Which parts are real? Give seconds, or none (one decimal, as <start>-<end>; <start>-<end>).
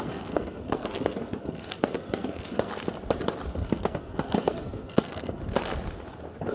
2.7-3.5; 5.4-6.5